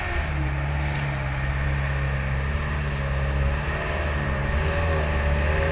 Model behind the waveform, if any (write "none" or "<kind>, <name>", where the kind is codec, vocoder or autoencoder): none